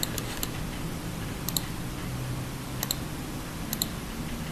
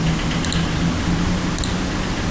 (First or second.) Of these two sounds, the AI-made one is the first